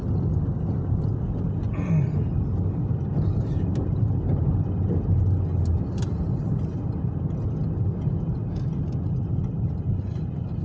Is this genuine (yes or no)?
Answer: yes